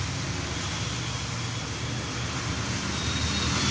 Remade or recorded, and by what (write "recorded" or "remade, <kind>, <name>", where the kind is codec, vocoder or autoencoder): recorded